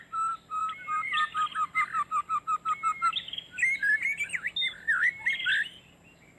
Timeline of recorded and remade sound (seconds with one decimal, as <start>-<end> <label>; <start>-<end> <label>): 0.0-6.4 recorded